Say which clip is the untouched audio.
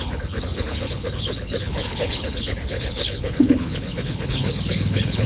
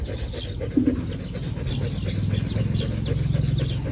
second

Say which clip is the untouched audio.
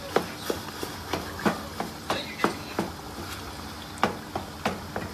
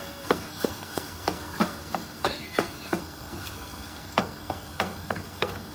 first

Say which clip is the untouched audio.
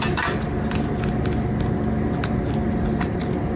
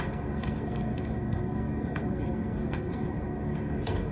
first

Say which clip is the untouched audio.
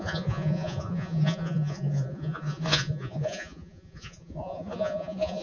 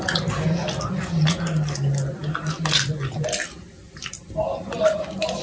second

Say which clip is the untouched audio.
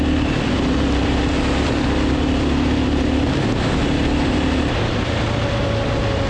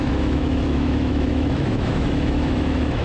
first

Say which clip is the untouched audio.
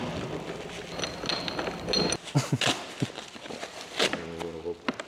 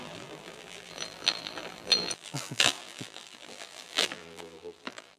first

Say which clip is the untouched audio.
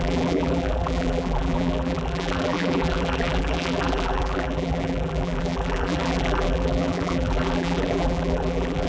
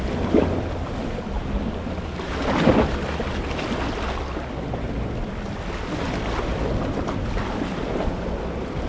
second